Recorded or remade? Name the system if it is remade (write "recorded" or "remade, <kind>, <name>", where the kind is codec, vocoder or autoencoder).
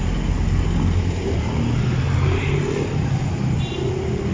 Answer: recorded